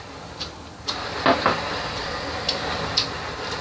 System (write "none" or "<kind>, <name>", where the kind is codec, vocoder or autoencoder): none